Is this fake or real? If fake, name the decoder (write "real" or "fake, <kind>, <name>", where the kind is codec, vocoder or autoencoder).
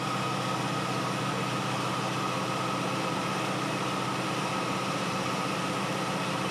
real